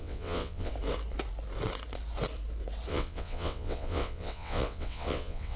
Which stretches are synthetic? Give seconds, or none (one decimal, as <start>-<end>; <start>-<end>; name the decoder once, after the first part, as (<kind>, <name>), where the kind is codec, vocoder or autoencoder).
0.0-0.7 (vocoder, WaveNeXt); 2.9-5.6